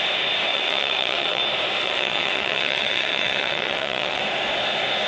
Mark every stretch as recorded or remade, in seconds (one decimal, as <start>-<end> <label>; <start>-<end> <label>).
0.0-0.5 recorded; 0.5-1.4 remade; 1.4-1.8 recorded; 1.8-4.2 remade; 4.2-5.1 recorded